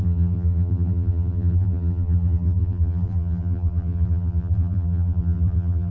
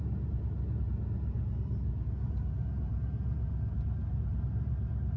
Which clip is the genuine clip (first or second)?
second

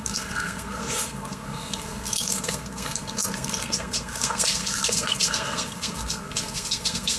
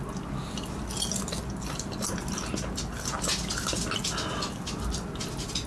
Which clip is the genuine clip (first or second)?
second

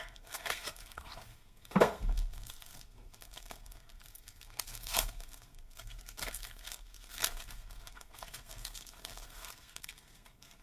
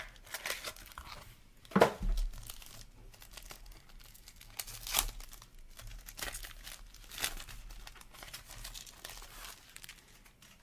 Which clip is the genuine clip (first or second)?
second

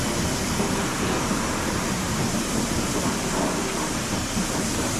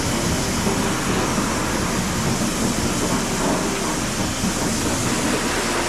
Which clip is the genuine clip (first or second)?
second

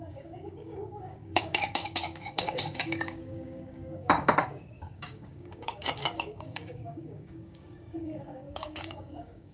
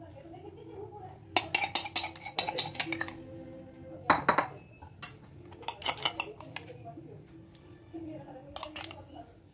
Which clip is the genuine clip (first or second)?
second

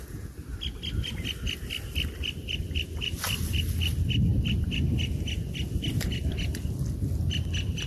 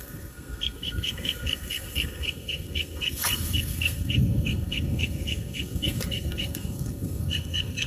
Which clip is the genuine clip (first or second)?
first